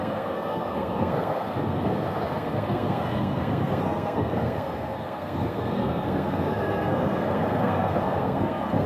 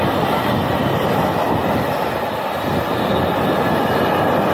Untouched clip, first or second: second